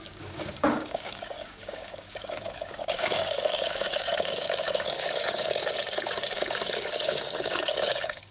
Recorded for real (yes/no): no